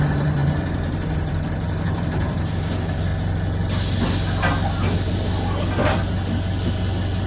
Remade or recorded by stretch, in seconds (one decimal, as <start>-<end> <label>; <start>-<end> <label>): 0.0-3.1 remade; 3.1-7.3 recorded